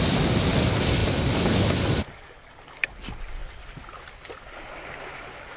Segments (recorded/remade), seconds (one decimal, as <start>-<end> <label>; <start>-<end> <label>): 0.0-5.6 recorded